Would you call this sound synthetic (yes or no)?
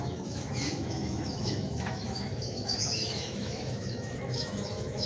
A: yes